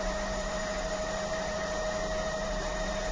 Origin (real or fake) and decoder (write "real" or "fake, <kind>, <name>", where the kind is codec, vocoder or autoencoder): fake, vocoder, BigVGAN v2